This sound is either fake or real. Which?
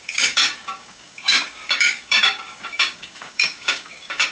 fake